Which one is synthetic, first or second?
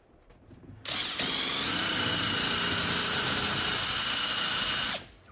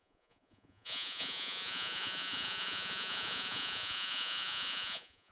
second